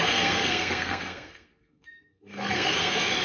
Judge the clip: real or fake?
fake